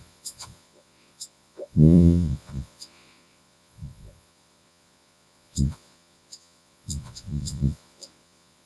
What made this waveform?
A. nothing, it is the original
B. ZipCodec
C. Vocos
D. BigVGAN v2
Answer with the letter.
C